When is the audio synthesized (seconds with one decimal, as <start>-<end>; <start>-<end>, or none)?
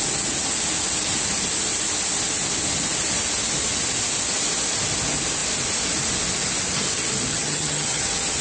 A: 7.3-8.0